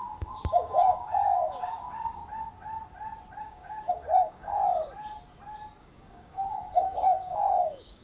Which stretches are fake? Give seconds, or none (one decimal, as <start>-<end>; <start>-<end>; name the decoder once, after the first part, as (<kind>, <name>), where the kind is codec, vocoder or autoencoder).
0.0-2.2 (codec, DAC); 3.4-4.6; 5.8-8.0